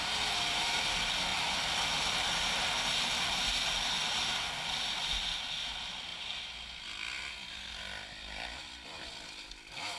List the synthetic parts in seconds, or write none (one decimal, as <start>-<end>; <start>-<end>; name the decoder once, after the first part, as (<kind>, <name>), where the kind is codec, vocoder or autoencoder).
none